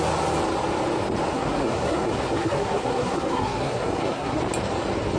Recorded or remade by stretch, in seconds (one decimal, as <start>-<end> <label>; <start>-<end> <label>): 0.0-1.3 recorded; 1.3-4.4 remade; 4.4-5.2 recorded